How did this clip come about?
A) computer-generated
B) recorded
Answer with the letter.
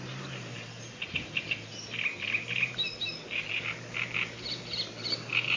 B